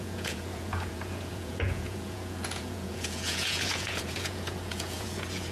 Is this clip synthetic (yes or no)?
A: yes